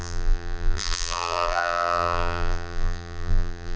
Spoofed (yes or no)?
yes